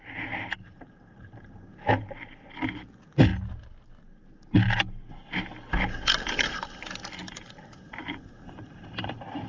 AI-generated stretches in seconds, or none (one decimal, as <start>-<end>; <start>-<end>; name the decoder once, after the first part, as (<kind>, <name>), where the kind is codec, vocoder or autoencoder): 0.6-1.9 (vocoder, BigVGAN v2); 7.2-9.5